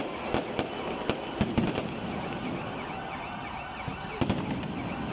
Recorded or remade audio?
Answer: recorded